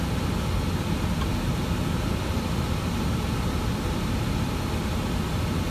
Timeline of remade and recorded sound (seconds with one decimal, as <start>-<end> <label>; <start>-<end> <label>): 0.0-1.3 recorded; 1.3-4.5 remade; 4.5-5.7 recorded